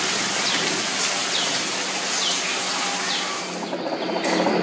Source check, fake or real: real